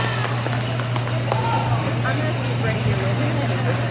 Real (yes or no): yes